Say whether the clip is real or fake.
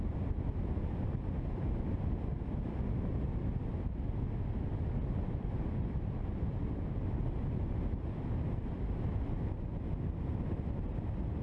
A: real